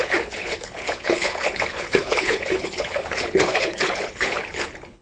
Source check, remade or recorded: remade